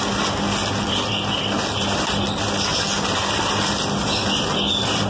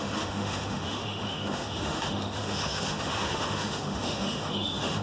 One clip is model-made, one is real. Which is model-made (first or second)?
second